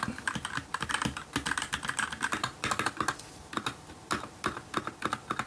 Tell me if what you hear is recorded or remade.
recorded